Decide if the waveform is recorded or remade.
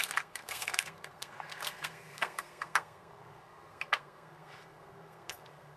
remade